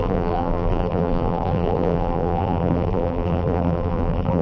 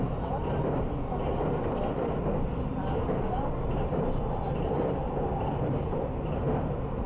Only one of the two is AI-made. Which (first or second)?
first